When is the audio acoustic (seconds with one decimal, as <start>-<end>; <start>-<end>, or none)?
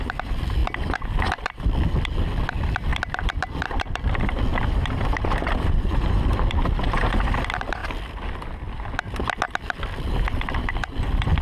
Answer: 7.8-10.0